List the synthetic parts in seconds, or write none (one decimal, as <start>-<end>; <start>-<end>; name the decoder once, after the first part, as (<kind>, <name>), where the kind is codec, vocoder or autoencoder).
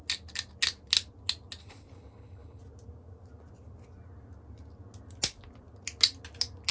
1.6-2.6 (codec, HILCodec)